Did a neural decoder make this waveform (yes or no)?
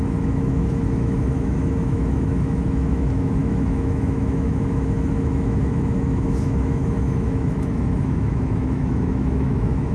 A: yes